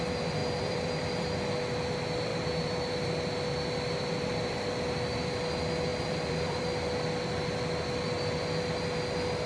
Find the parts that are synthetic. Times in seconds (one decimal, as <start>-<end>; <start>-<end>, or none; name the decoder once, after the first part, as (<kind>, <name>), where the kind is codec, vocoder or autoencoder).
0.4-1.4 (vocoder, BigVGAN v2); 2.3-3.1; 5.9-6.6